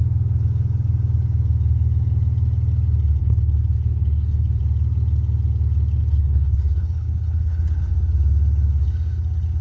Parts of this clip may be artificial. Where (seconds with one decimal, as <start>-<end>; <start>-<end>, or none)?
3.2-4.6; 6.0-7.9